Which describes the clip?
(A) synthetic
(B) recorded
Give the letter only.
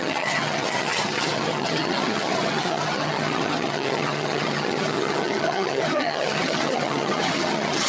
A